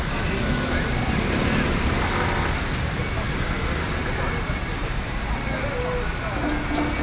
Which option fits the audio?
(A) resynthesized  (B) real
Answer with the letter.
B